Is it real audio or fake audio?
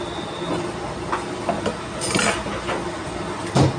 real